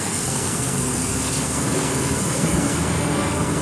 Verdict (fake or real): fake